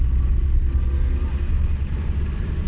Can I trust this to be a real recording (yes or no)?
yes